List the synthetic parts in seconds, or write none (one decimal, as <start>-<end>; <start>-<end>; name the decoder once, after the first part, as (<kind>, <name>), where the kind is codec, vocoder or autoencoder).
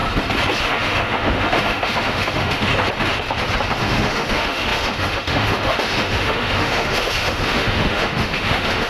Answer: 0.6-2.7 (autoencoder, DAC-VAE); 3.8-8.9